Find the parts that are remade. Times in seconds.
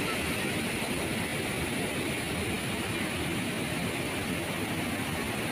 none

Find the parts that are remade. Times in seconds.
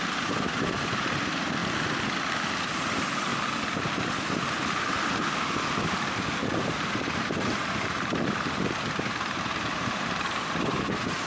0.0-1.6 (vocoder, BigVGAN v2); 2.8-3.3; 6.6-11.3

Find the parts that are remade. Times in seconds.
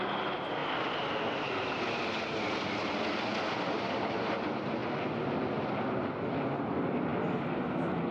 none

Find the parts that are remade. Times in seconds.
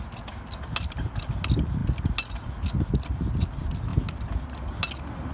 none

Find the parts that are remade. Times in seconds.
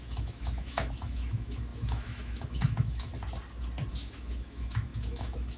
0.0-3.1 (autoencoder, DAC-VAE); 3.9-5.6